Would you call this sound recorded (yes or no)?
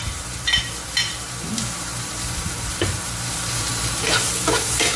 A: no